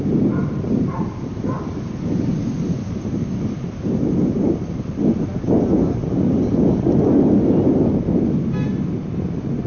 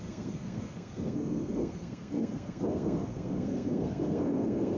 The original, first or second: first